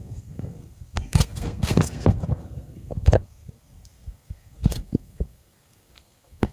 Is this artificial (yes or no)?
yes